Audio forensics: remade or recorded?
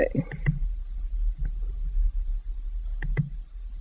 recorded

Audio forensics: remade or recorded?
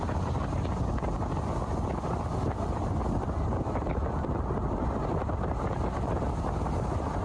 recorded